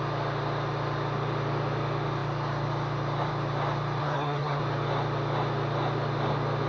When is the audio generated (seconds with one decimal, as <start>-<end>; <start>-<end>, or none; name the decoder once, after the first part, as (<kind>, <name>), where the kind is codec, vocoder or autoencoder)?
4.0-4.6 (codec, SNAC)